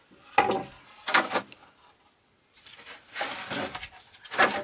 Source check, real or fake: real